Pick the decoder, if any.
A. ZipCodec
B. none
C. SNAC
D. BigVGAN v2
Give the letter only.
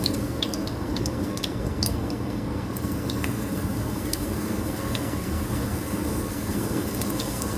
C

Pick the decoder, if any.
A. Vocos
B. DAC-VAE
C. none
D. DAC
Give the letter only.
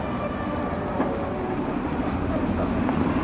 C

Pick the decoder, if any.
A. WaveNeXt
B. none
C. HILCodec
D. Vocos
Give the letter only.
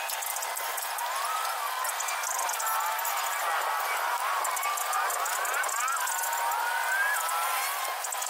B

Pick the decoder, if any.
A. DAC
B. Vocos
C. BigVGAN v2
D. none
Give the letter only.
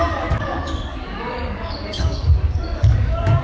A